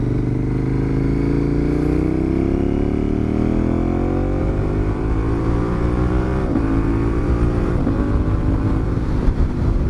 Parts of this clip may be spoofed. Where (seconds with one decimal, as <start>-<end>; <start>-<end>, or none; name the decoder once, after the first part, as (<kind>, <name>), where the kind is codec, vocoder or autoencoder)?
4.4-9.9 (vocoder, BigVGAN v2)